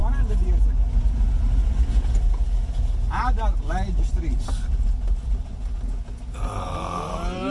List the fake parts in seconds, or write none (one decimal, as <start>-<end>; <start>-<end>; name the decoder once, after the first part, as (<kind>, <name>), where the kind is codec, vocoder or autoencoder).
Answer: none